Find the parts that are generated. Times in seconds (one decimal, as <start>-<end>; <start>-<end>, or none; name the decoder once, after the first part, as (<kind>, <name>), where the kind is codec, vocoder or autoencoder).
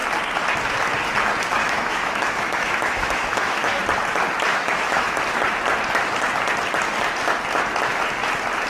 1.6-3.8 (autoencoder, DAC-VAE); 4.5-5.2